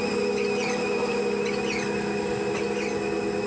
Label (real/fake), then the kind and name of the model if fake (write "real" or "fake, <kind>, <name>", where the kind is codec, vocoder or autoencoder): real